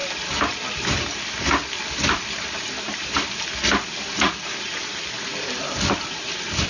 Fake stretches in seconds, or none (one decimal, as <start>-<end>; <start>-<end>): none

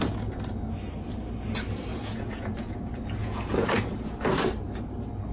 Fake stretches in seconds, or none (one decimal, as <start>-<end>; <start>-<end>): 1.9-2.8; 3.2-3.8

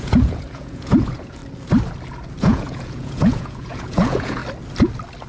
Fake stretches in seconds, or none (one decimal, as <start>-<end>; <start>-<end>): 0.0-1.4; 2.4-4.4

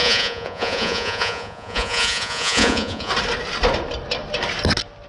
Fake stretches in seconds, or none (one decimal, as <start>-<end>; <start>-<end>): 0.0-3.1